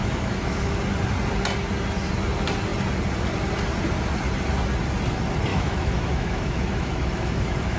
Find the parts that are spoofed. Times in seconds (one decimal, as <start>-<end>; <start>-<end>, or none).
0.0-0.8; 5.5-7.8

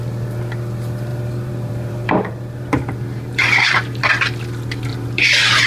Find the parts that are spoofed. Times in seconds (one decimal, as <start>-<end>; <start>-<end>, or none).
1.1-4.0; 4.9-5.7